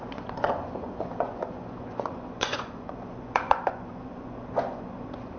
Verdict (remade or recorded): remade